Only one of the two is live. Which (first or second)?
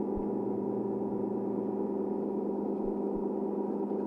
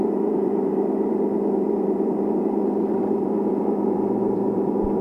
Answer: first